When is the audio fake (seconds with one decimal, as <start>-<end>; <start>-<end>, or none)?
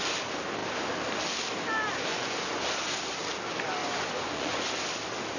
2.1-2.6; 3.8-4.8